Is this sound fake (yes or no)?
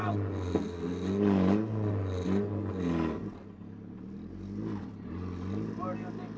no